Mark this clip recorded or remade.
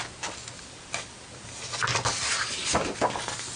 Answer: recorded